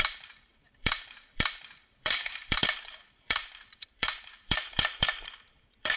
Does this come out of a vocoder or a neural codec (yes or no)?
yes